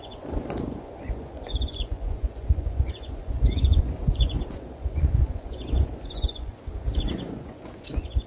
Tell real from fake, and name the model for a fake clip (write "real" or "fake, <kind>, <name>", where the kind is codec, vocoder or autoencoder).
fake, vocoder, Vocos